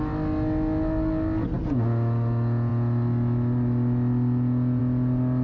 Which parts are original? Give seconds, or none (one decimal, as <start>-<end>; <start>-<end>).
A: 0.0-5.4